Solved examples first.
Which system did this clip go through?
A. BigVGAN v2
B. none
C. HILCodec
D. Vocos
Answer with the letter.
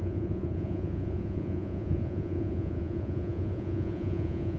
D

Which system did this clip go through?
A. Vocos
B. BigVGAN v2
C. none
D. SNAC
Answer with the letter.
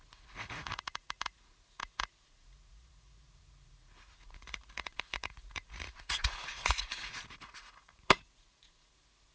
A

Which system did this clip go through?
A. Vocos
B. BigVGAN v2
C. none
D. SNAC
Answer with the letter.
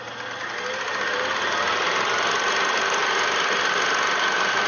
C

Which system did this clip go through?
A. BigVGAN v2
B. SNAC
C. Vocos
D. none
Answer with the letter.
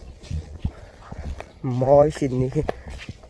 C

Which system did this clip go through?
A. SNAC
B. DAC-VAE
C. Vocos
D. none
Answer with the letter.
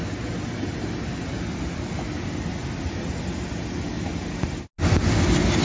D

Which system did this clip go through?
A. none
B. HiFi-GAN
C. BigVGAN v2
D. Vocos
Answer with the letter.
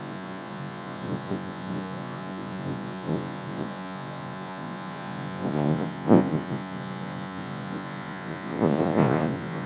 D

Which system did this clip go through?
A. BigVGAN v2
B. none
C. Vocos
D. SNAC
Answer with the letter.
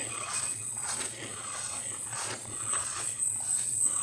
C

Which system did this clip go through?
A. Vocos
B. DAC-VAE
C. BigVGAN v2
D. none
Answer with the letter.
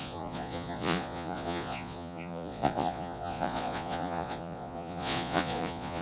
A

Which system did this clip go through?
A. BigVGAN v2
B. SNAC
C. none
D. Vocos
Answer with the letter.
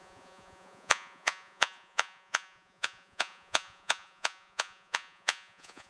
D